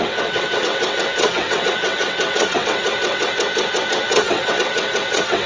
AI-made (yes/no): yes